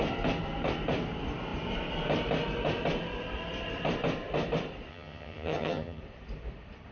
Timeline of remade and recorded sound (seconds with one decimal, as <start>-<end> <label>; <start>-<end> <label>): 0.0-4.9 recorded; 4.9-6.0 remade; 6.0-6.9 recorded